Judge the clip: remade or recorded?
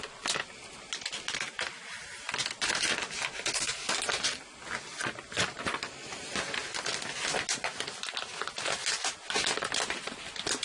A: recorded